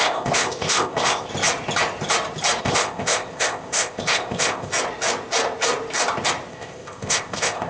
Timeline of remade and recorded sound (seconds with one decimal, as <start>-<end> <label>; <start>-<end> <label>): 0.0-1.3 remade; 1.3-2.6 recorded; 2.6-4.7 remade; 4.7-6.5 recorded; 6.5-7.7 remade